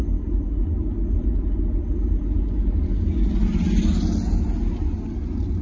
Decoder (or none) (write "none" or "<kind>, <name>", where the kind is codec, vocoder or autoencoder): none